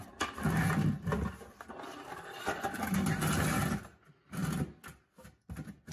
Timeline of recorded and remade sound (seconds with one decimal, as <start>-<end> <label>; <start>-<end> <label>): 0.0-5.9 recorded